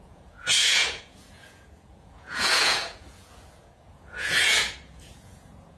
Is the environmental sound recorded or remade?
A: remade